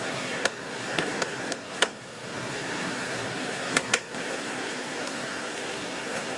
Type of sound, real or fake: fake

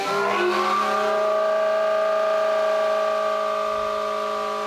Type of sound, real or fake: fake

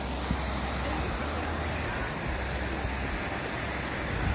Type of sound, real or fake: real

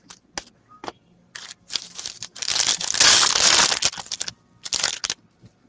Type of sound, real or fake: real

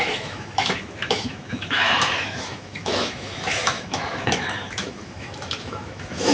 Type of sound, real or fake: fake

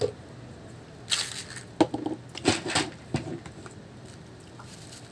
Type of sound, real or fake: real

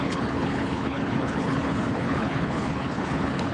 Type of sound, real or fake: fake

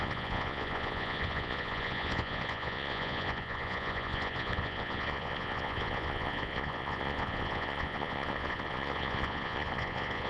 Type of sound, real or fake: fake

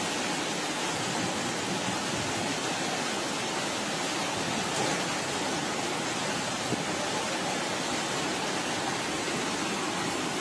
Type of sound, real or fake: real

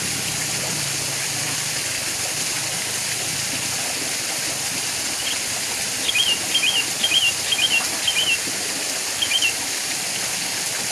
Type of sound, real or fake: real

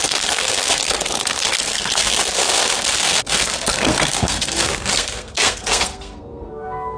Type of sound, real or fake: fake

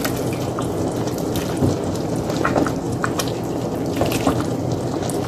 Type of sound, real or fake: real